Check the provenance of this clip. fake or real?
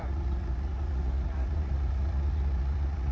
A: fake